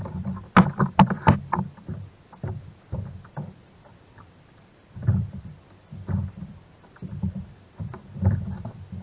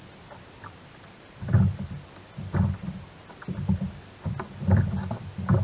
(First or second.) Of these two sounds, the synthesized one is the first